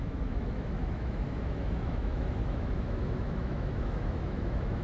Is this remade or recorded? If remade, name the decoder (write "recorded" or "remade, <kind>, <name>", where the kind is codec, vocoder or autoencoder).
remade, autoencoder, DAC-VAE